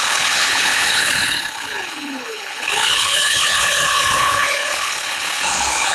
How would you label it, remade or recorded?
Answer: remade